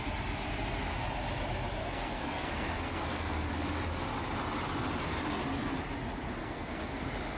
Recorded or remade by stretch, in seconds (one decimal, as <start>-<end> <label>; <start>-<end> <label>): 0.0-1.8 recorded; 1.8-3.5 remade; 3.5-6.4 recorded; 6.4-7.0 remade; 7.0-7.4 recorded